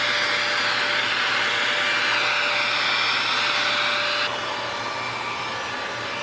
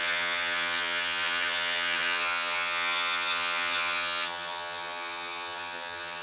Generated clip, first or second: second